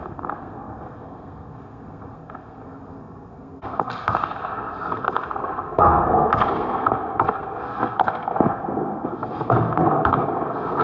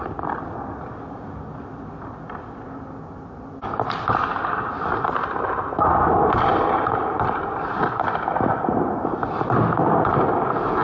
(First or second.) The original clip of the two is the second